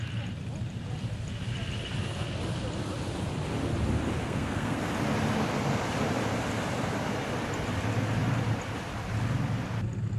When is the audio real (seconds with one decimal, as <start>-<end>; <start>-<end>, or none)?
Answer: 0.0-4.2; 4.9-10.2